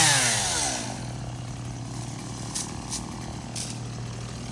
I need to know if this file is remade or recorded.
recorded